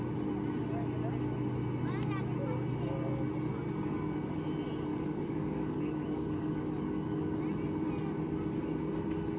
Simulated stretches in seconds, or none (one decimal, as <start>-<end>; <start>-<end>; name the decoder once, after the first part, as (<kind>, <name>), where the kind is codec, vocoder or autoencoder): 4.9-7.4 (codec, DAC)

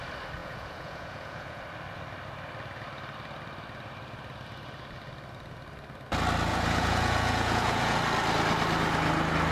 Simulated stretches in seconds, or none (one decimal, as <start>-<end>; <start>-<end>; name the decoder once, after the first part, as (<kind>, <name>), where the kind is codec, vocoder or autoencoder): 0.4-1.6 (vocoder, Vocos); 6.5-8.0